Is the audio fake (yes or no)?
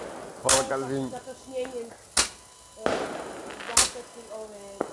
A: no